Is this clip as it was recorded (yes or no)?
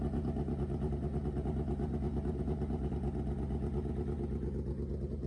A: yes